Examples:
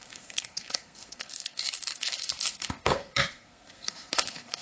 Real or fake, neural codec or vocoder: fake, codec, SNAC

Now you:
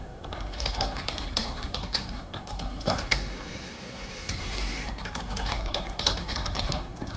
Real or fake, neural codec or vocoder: fake, codec, SNAC